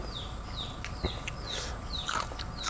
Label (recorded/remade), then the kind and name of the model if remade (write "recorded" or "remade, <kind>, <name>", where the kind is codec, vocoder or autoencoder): recorded